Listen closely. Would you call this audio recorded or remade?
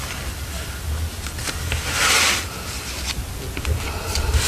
recorded